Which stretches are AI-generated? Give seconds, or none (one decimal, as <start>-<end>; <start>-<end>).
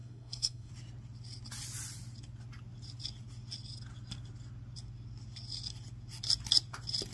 0.0-0.7